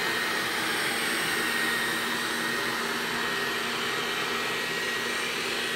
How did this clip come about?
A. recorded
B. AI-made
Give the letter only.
A